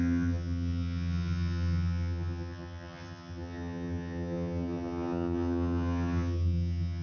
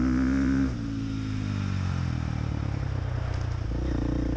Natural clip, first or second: second